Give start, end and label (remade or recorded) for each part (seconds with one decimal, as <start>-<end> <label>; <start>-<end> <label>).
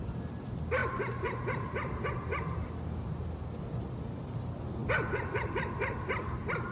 0.0-4.8 recorded; 4.8-6.7 remade